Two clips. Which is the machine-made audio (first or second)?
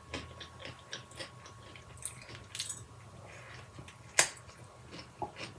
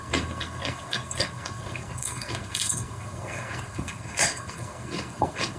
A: second